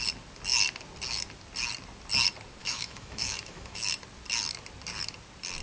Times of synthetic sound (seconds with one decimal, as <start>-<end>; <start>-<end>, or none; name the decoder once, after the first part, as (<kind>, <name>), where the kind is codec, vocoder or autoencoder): 2.6-3.8 (autoencoder, DAC-VAE)